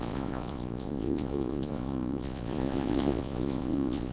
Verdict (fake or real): fake